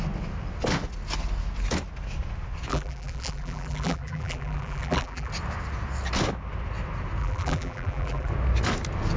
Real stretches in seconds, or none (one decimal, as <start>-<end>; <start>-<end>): 0.0-2.7; 5.3-7.2; 8.3-9.2